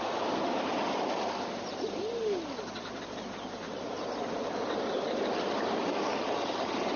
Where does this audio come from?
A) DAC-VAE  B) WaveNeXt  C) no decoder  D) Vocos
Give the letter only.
C